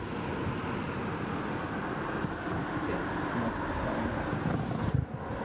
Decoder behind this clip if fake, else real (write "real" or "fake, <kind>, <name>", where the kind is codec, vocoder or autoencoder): real